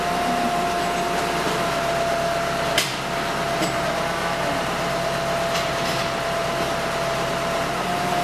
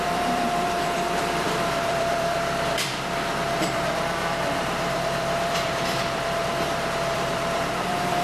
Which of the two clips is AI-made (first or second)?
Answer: second